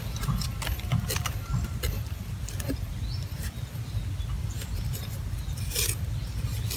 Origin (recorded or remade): recorded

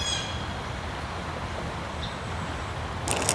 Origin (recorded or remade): recorded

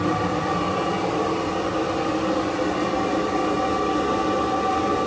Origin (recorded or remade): recorded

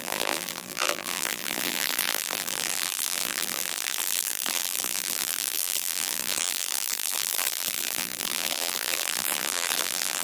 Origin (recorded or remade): remade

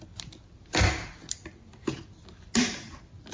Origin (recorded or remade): recorded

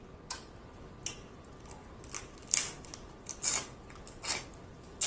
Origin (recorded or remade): recorded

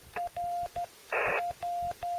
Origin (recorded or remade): recorded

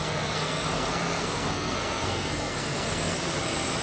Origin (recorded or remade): remade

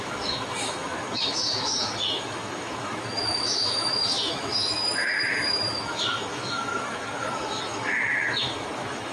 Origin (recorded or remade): remade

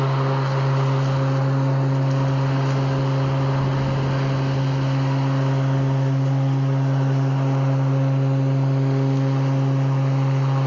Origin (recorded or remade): recorded